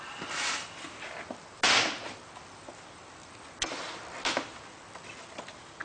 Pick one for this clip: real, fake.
real